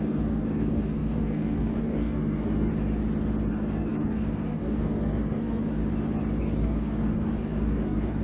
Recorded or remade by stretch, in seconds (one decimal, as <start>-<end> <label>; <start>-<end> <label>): 0.0-2.7 remade; 2.7-3.5 recorded; 3.5-5.8 remade; 5.8-6.4 recorded; 6.4-8.2 remade